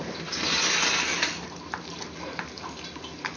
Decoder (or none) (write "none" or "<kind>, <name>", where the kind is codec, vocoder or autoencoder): none